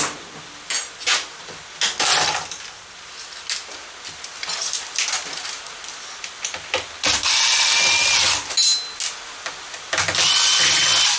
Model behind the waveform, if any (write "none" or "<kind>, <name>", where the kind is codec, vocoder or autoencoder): none